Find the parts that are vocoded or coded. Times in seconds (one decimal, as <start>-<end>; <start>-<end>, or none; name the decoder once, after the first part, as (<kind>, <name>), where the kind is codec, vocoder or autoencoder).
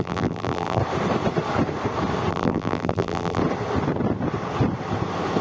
0.0-0.8 (vocoder, BigVGAN v2); 2.3-3.4